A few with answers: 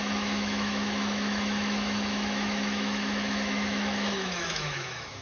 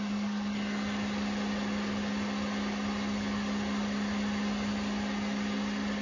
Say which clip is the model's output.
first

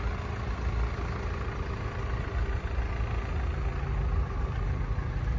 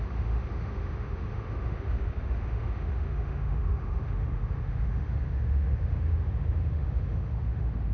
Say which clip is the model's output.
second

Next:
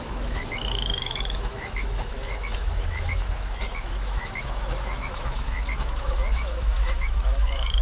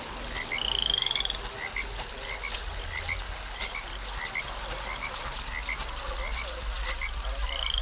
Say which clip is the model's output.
first